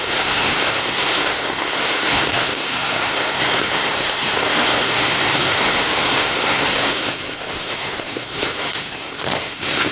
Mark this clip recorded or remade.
remade